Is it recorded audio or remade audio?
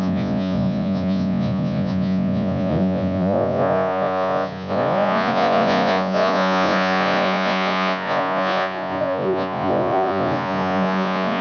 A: remade